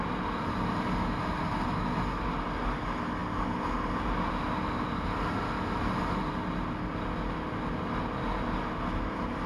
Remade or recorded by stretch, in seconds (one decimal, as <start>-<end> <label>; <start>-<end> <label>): 0.0-9.5 recorded